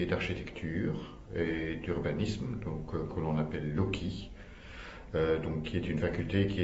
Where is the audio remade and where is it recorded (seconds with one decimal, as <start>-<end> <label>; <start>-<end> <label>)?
0.0-0.7 recorded; 0.7-4.7 remade; 4.7-6.6 recorded